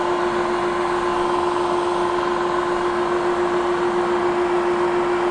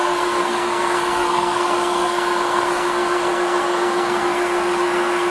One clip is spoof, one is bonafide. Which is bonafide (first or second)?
first